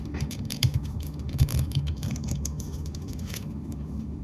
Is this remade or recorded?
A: remade